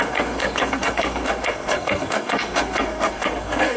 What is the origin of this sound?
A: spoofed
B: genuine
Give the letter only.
A